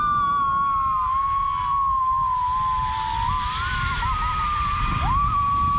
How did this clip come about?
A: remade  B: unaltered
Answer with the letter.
B